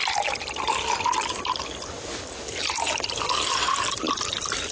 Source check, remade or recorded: recorded